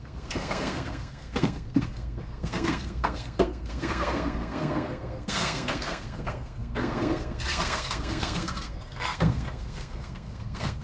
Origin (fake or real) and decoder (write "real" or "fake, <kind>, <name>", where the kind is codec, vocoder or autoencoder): fake, codec, SNAC